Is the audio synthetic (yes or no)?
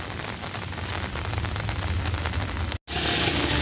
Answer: no